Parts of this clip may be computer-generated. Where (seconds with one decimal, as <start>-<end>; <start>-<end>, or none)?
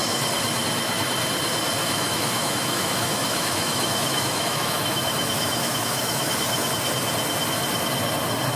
1.8-6.7